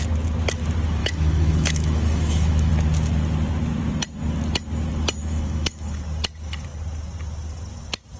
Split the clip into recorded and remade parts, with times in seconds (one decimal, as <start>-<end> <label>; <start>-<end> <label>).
0.0-1.0 recorded; 1.0-2.7 remade; 2.7-5.2 recorded; 5.2-6.0 remade; 6.0-8.2 recorded